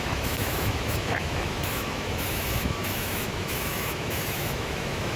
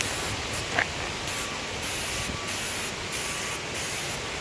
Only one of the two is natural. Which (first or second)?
second